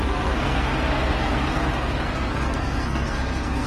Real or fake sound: fake